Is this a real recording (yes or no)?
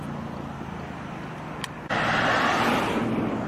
yes